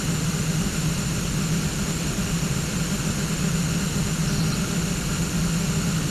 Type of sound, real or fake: fake